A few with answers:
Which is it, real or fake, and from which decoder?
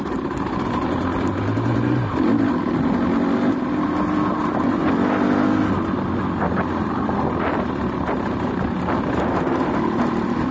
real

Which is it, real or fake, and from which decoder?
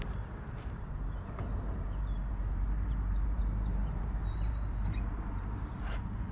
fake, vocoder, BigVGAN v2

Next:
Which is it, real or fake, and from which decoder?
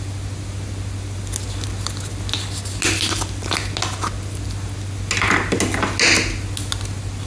real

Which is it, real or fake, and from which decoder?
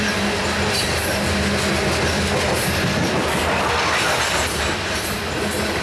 real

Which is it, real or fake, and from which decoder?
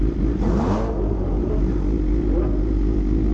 real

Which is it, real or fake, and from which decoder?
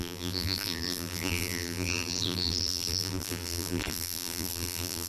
fake, vocoder, BigVGAN v2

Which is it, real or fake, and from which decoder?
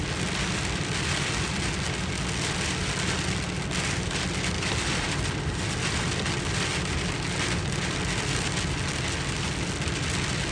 real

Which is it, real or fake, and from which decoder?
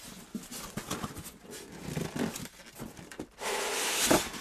real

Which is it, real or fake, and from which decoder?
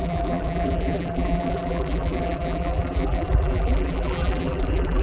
fake, vocoder, BigVGAN v2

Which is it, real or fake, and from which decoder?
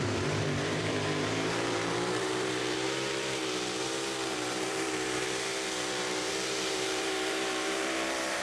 fake, vocoder, BigVGAN v2